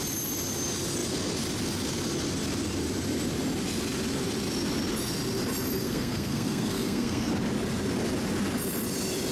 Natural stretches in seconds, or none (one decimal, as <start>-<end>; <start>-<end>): 0.0-5.8; 7.3-9.3